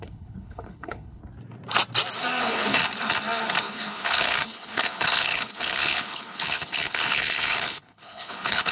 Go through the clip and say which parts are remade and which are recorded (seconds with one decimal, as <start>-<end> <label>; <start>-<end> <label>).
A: 0.0-1.2 remade; 1.2-2.4 recorded; 2.4-2.8 remade; 2.8-3.6 recorded; 3.6-8.7 remade